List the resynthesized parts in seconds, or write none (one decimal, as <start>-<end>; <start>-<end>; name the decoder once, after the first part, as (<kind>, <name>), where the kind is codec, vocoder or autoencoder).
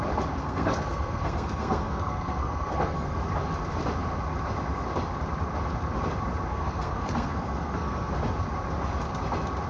0.4-3.2 (codec, SNAC); 6.5-8.1